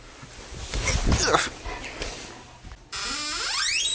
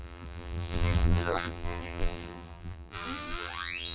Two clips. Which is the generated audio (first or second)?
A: second